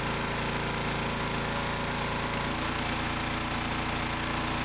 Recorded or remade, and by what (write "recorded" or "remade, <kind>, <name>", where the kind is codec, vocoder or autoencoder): recorded